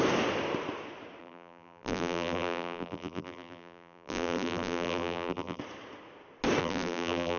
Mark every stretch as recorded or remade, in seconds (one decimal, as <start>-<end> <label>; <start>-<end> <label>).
0.0-1.2 recorded; 1.2-5.6 remade; 5.6-6.6 recorded; 6.6-7.4 remade